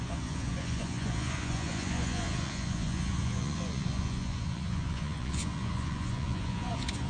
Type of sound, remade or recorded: remade